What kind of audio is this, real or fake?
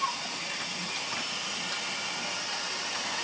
real